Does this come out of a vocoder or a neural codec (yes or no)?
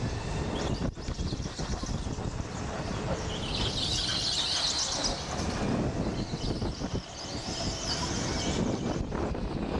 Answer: no